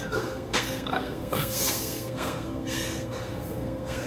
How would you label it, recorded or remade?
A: remade